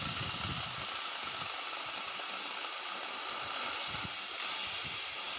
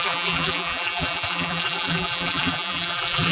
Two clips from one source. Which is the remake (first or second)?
second